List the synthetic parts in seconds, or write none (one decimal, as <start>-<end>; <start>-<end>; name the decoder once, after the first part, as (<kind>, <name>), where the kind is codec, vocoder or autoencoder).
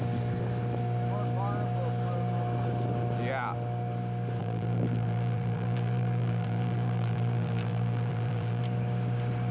4.4-8.6 (vocoder, BigVGAN v2)